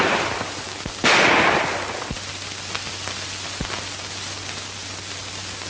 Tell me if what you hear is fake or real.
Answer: real